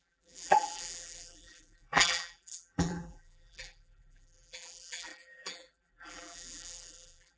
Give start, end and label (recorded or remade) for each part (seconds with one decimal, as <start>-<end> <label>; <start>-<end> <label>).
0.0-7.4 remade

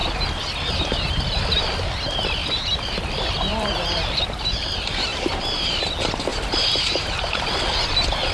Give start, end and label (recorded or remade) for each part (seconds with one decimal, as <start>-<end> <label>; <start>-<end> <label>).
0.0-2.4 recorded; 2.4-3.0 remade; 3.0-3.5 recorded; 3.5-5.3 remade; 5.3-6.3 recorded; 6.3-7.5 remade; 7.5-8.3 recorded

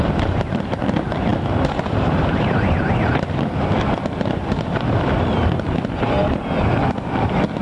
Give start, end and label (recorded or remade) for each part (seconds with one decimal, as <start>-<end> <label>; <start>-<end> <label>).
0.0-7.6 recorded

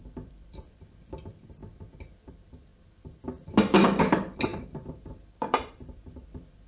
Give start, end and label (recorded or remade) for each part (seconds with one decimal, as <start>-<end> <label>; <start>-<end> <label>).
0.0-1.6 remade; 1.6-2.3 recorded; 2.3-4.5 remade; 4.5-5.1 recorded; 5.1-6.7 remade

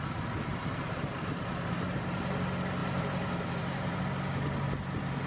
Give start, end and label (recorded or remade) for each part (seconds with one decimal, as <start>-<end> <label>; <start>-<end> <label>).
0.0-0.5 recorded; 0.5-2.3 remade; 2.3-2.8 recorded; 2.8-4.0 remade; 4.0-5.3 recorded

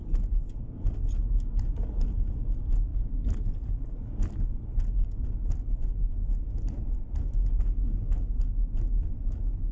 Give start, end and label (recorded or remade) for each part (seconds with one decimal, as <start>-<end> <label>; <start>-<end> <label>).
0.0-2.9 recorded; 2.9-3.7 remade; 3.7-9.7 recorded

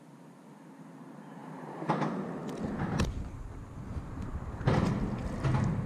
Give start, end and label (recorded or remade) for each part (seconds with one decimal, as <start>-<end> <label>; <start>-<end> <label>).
0.0-1.4 recorded; 1.4-1.9 remade; 1.9-3.9 recorded; 3.9-4.6 remade; 4.6-5.9 recorded

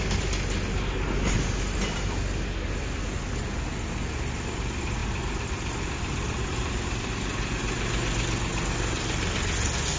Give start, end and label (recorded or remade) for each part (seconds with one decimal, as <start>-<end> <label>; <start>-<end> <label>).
0.0-10.0 recorded